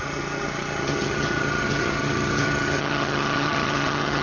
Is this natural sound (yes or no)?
no